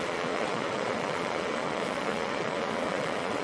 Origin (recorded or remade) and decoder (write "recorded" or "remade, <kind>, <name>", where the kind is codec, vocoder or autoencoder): remade, vocoder, Vocos